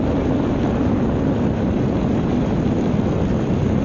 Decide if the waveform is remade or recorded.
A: recorded